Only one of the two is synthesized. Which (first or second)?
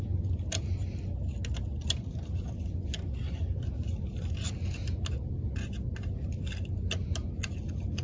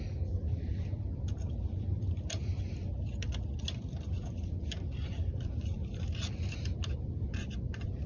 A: second